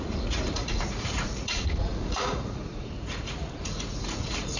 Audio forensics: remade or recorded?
remade